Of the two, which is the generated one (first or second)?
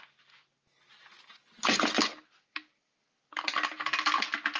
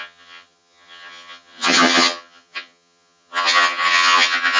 second